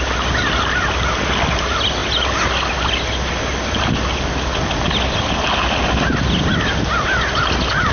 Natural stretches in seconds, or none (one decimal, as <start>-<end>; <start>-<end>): 0.0-7.9